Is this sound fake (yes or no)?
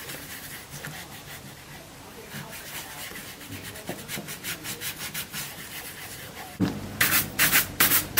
yes